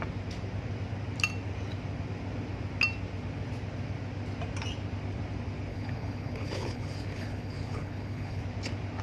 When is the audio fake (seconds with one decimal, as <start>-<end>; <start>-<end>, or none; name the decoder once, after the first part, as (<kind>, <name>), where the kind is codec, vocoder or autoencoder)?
5.7-8.4 (codec, HILCodec)